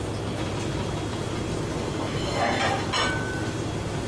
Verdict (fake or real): real